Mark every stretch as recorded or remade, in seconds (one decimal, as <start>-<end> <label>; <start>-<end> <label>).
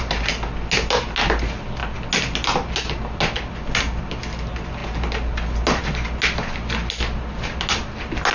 0.0-8.3 recorded